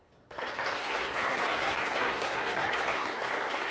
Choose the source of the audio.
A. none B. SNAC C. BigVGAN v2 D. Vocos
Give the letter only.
B